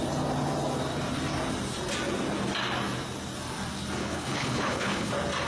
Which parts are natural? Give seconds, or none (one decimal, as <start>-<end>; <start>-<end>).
0.0-4.0; 5.1-5.5